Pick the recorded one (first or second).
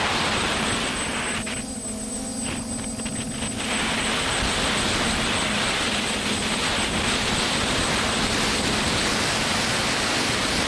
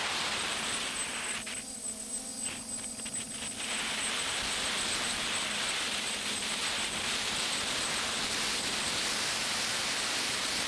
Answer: first